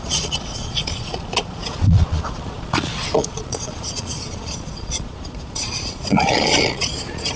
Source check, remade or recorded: remade